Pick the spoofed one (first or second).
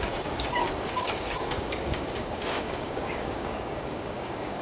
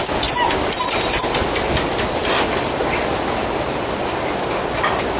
first